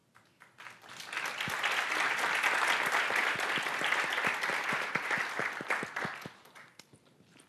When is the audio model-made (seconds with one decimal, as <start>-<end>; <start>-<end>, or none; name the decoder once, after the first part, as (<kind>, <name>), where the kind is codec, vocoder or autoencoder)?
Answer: 3.5-7.5 (vocoder, BigVGAN v2)